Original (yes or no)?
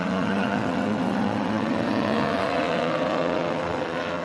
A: no